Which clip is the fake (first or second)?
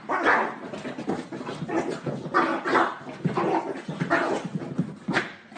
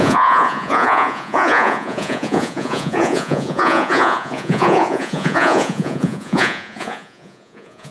second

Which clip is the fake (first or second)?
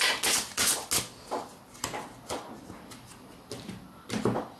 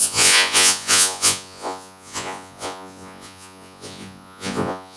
second